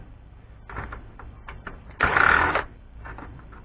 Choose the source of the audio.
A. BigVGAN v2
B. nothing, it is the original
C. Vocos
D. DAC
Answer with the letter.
B